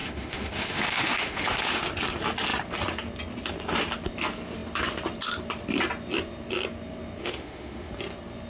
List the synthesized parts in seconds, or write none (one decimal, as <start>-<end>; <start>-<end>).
0.0-1.8; 7.2-7.9